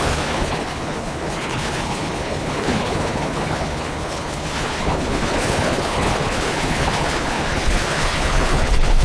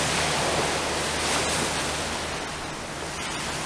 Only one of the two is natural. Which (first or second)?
second